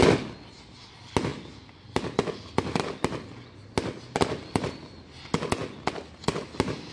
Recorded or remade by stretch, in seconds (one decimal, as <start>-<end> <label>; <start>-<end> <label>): 0.0-6.9 recorded